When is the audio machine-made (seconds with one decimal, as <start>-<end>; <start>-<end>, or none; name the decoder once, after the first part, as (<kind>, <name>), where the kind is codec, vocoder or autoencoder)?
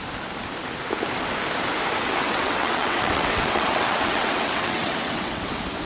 2.0-5.5 (vocoder, WaveNeXt)